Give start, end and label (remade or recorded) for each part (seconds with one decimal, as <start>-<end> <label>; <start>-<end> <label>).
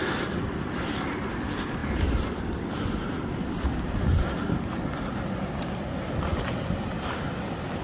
0.0-7.8 recorded